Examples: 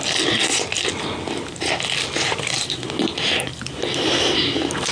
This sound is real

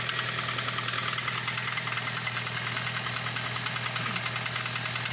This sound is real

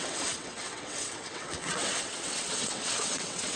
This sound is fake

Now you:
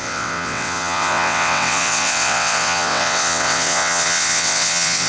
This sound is fake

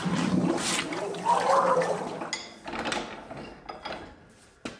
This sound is real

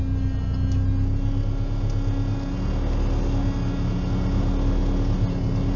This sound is real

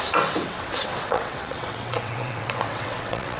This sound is fake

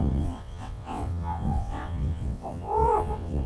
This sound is fake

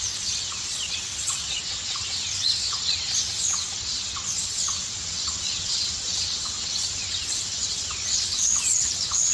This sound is fake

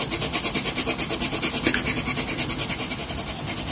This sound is real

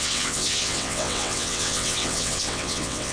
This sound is fake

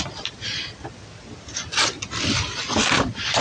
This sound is real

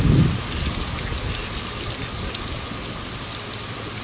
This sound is real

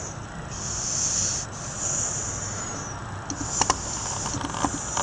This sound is real